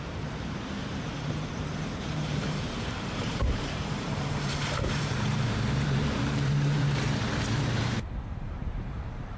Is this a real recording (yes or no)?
no